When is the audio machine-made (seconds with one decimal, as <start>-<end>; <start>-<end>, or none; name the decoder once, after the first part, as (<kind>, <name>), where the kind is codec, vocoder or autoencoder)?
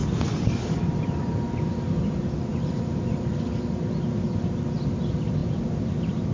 2.5-3.8 (vocoder, BigVGAN v2)